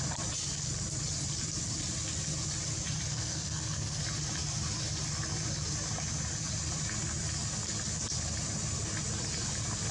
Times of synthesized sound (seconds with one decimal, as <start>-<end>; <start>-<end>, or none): 3.1-4.0